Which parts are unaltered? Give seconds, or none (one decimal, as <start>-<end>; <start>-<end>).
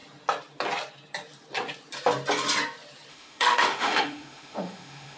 0.0-3.1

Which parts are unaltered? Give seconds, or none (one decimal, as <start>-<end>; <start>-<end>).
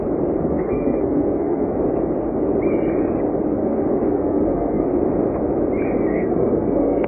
0.0-0.4; 1.7-3.6; 4.9-6.1